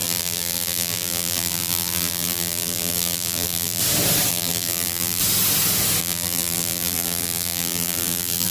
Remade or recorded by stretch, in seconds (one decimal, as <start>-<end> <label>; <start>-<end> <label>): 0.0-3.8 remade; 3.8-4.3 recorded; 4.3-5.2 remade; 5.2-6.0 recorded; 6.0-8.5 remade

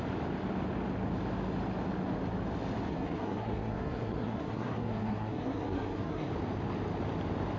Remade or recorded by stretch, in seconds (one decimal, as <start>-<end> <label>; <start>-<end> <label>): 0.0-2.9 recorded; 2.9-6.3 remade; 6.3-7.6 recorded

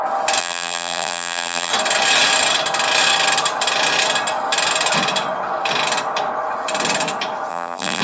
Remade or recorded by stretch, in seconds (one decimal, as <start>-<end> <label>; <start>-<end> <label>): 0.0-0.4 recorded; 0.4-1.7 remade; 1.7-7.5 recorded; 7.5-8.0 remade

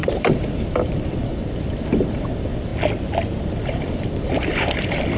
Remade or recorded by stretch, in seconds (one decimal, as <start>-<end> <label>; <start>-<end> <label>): 0.0-2.7 remade; 2.7-3.4 recorded; 3.4-5.2 remade

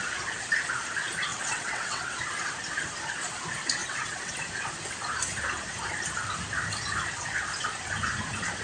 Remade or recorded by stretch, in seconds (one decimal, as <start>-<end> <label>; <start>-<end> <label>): 0.0-1.3 recorded; 1.3-2.0 remade; 2.0-3.8 recorded; 3.8-4.3 remade; 4.3-8.6 recorded

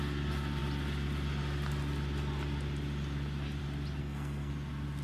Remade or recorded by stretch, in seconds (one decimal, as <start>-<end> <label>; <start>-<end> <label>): 0.0-4.0 recorded; 4.0-4.5 remade; 4.5-5.0 recorded